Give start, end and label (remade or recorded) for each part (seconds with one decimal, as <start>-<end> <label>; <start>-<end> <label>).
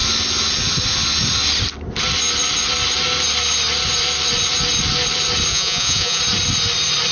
0.0-5.5 recorded; 5.5-6.2 remade; 6.2-7.1 recorded